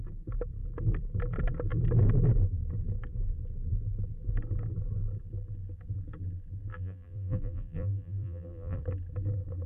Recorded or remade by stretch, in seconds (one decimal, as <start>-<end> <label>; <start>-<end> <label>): 0.0-6.7 recorded; 6.7-8.8 remade; 8.8-9.7 recorded